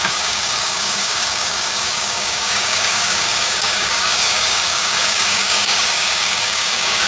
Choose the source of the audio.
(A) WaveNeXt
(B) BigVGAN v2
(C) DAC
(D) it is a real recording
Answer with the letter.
C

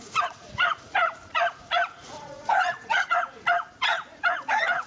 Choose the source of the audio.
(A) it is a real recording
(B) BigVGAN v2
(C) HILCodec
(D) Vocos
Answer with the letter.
D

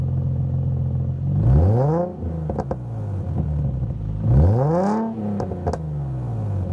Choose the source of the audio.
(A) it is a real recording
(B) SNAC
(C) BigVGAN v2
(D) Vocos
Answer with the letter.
A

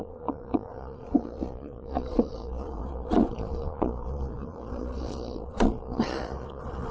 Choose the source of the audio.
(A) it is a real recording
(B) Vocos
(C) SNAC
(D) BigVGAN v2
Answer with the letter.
B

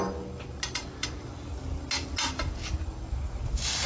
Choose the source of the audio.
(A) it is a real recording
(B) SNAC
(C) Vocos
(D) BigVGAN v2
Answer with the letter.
A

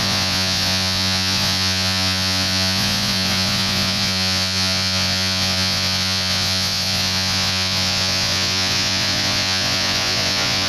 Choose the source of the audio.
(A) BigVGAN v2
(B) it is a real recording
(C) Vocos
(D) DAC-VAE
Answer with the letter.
C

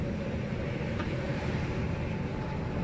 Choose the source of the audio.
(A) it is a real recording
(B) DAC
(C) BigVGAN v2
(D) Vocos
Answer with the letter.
C